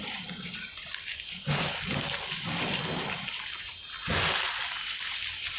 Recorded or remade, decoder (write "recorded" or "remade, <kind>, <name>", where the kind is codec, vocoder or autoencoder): recorded